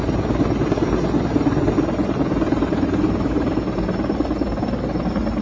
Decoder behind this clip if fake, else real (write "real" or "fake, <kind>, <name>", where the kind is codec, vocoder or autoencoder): real